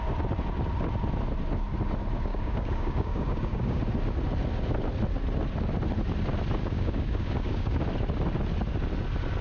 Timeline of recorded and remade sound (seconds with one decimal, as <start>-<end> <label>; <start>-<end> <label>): 0.0-2.3 recorded; 2.3-3.8 remade; 3.8-6.6 recorded; 6.6-7.8 remade; 7.8-9.4 recorded